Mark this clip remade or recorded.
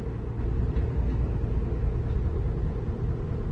recorded